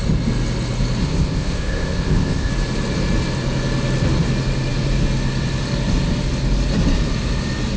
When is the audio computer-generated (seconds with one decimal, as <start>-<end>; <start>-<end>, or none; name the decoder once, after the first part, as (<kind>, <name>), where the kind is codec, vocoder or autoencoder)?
1.0-2.5 (codec, ZipCodec)